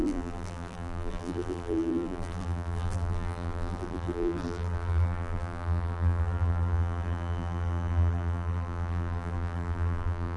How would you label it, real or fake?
fake